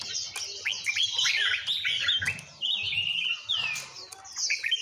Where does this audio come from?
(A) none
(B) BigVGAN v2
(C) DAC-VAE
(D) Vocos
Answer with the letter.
A